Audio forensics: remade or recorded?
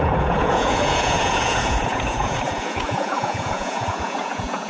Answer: remade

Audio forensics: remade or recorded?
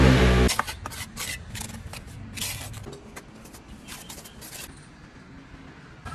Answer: recorded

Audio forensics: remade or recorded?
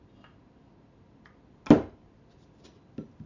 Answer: recorded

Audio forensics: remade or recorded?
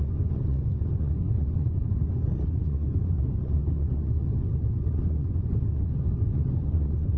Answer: remade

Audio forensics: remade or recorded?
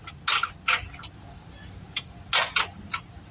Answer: recorded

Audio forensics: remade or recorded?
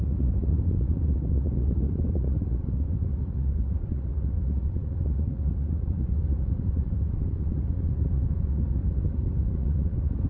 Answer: remade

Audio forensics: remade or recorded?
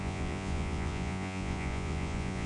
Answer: remade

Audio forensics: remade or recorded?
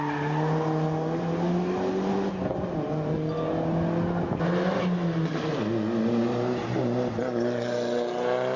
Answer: recorded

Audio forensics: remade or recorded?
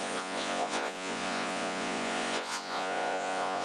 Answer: remade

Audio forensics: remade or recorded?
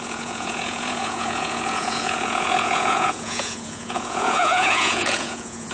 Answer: remade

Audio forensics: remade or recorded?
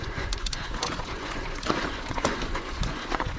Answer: remade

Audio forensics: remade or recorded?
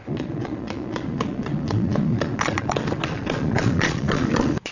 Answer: remade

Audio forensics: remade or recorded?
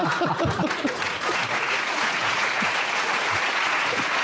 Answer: remade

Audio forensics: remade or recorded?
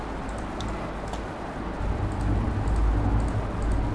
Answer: recorded